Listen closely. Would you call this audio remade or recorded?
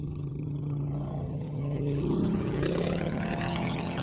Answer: remade